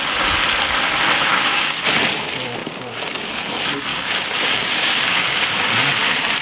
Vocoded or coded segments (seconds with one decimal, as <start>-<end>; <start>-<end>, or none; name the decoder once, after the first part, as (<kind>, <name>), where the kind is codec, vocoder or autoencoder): 1.3-1.8 (codec, DAC); 2.6-3.3; 3.9-5.4